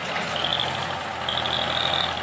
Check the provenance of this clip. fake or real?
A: real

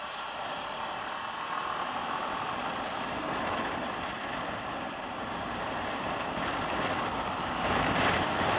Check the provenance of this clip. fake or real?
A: real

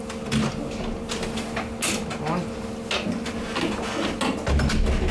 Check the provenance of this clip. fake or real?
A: real